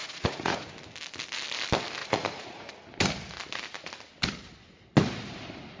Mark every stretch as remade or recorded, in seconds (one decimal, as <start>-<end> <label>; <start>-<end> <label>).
0.0-0.7 remade; 0.7-2.0 recorded; 2.0-2.7 remade; 2.7-5.8 recorded